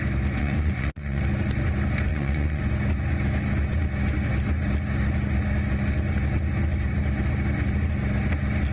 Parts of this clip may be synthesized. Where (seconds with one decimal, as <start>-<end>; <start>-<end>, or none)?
0.4-1.2; 2.1-2.6